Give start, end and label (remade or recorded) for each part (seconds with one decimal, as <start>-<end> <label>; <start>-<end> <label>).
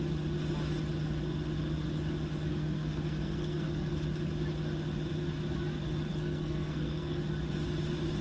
0.0-2.5 recorded; 2.5-3.9 remade; 3.9-6.1 recorded; 6.1-7.2 remade; 7.2-8.2 recorded